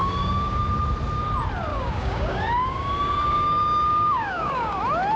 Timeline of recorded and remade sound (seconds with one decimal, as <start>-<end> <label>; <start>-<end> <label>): 0.0-0.6 remade; 0.6-1.7 recorded; 1.7-4.8 remade; 4.8-5.2 recorded